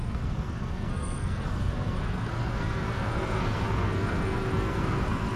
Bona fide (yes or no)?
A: no